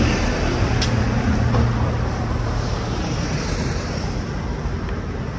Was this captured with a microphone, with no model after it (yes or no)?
yes